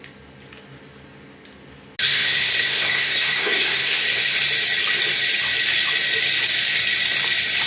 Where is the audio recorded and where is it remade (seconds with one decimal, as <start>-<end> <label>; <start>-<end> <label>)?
0.0-2.0 recorded; 2.0-4.2 remade; 4.2-7.7 recorded